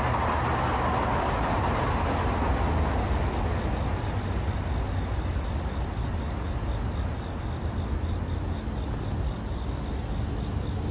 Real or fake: real